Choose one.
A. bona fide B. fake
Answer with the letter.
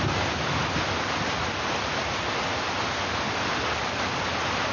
A